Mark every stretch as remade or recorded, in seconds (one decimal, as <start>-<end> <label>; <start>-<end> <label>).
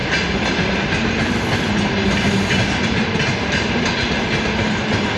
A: 0.0-5.2 recorded